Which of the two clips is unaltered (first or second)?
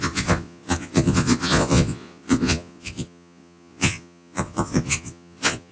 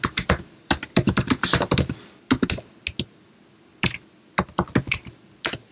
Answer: second